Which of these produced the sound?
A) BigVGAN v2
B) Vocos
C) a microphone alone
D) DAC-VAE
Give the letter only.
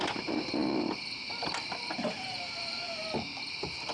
A